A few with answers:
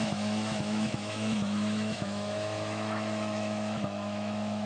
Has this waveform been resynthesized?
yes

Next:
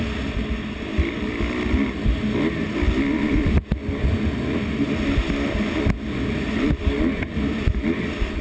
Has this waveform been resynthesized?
no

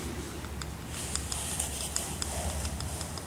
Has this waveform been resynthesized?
no